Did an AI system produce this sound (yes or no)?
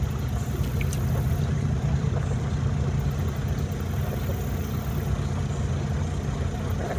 no